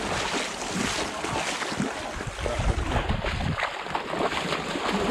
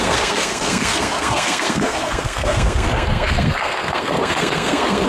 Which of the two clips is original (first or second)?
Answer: first